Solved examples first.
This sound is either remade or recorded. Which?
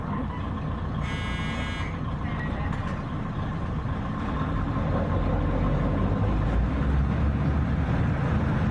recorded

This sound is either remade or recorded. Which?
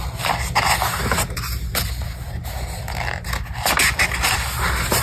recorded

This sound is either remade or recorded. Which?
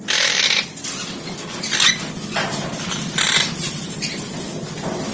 recorded